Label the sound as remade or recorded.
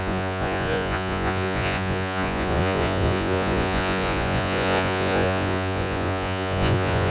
remade